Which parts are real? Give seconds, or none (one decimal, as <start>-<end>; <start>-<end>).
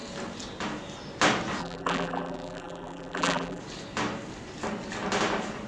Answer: 0.0-1.6; 3.6-5.7